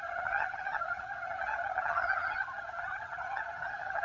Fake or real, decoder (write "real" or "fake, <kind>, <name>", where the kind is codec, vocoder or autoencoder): fake, vocoder, HiFi-GAN